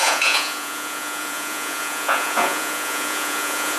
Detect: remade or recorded remade